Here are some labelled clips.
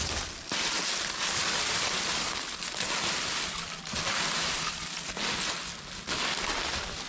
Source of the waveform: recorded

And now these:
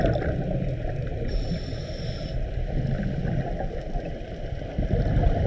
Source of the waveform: recorded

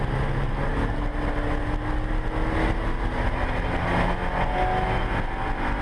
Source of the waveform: recorded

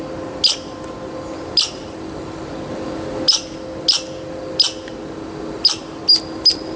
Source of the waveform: recorded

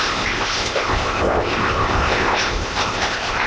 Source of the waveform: remade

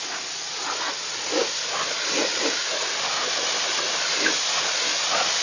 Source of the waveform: recorded